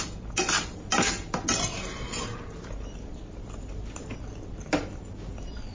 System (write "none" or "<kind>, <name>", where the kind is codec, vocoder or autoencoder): none